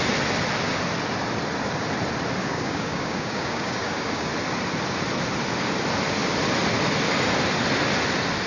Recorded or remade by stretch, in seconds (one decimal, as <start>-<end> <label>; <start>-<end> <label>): 0.0-2.4 recorded; 2.4-4.3 remade; 4.3-8.5 recorded